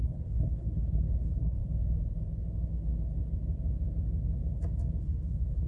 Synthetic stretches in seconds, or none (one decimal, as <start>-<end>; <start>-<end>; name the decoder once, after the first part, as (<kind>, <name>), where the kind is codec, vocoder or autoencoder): 0.0-1.6 (codec, HILCodec); 5.0-5.7

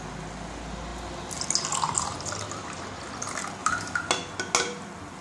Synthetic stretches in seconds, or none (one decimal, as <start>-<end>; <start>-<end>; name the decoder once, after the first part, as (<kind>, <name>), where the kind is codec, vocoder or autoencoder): 3.6-4.1 (vocoder, BigVGAN v2)

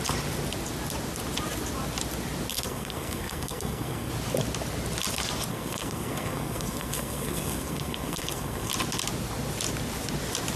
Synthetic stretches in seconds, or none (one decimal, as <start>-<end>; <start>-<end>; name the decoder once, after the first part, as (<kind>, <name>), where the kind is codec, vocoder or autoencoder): 2.5-4.1 (codec, SNAC); 5.5-8.7

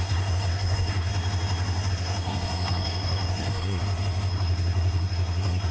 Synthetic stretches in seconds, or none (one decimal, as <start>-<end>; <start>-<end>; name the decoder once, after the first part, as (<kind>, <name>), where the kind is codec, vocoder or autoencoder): 0.0-1.1 (codec, SNAC); 1.9-3.8; 4.3-5.7

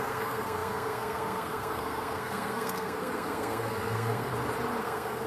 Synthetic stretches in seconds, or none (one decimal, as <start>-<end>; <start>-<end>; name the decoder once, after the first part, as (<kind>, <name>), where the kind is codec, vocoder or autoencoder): 0.0-4.3 (codec, SNAC); 4.8-5.3

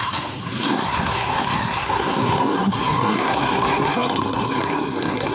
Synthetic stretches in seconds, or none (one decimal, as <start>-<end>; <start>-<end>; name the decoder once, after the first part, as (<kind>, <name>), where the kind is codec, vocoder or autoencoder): 0.0-5.3 (codec, SNAC)

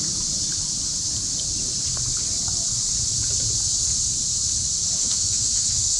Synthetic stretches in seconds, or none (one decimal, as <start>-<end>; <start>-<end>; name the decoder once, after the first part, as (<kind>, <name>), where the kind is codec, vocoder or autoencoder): 5.0-6.0 (autoencoder, DAC-VAE)

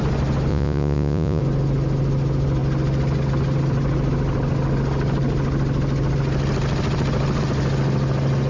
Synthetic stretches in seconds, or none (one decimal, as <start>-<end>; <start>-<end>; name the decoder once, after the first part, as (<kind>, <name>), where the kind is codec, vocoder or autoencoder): 0.5-1.4 (vocoder, Vocos)